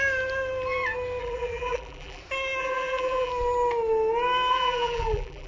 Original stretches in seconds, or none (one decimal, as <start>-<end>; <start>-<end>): 0.0-1.2; 2.2-2.6; 3.3-4.5